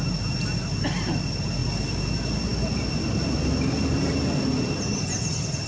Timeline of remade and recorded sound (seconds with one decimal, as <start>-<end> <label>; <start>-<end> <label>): 0.0-5.7 recorded